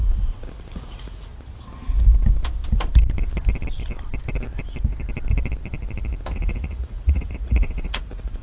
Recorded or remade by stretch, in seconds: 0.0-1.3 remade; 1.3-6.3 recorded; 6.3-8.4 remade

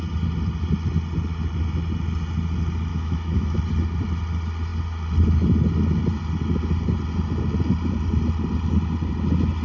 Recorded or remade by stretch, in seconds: 0.0-2.9 recorded; 2.9-3.6 remade; 3.6-9.6 recorded

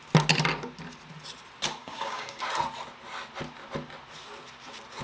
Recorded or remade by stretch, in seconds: 0.0-1.8 recorded; 1.8-2.4 remade; 2.4-5.0 recorded

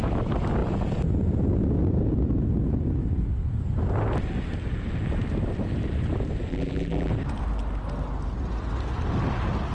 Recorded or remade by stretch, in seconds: 0.0-6.5 recorded; 6.5-7.1 remade; 7.1-9.7 recorded

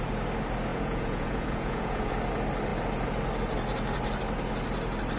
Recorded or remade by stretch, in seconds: 0.0-0.7 recorded; 0.7-2.1 remade; 2.1-5.2 recorded